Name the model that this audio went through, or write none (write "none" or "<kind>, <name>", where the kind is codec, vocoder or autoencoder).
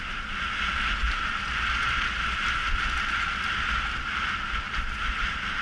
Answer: none